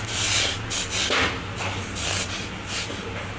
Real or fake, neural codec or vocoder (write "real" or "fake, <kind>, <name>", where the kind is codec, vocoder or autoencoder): real